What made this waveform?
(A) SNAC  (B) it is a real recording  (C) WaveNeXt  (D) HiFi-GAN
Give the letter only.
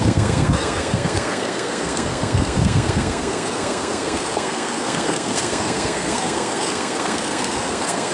A